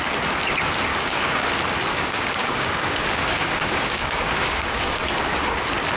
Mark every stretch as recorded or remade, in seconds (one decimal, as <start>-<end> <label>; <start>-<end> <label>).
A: 0.0-0.9 recorded; 0.9-1.5 remade; 1.5-1.9 recorded; 1.9-5.0 remade; 5.0-6.0 recorded

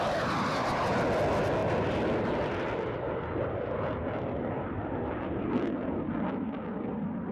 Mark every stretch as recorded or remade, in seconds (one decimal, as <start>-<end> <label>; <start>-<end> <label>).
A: 0.0-7.3 recorded

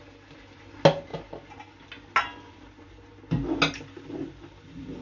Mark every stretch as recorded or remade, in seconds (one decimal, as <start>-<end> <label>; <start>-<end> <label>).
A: 0.0-5.0 recorded